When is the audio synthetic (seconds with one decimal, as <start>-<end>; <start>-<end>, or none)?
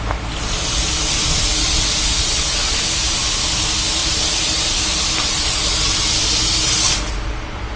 2.6-3.4; 4.0-5.6